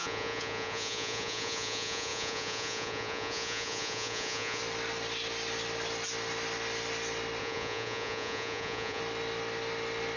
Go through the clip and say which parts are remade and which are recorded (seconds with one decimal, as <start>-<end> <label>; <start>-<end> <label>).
0.0-4.6 remade; 4.6-7.4 recorded; 7.4-9.0 remade; 9.0-10.2 recorded